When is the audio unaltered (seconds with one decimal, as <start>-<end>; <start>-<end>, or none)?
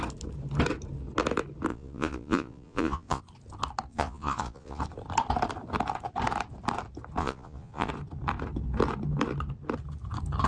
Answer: 0.0-1.7; 3.2-3.9; 4.8-7.2; 7.9-10.5